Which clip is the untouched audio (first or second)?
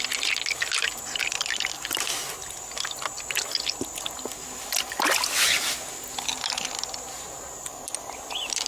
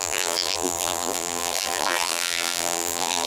first